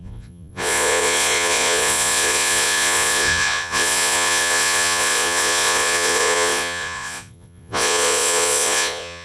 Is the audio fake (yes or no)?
yes